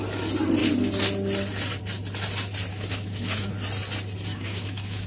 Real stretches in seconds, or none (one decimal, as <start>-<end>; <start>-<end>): 0.0-2.7; 3.5-4.3